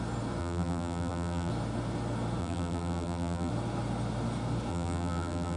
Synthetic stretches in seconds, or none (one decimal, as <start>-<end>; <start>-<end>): 0.4-1.5; 2.4-3.5; 4.7-5.6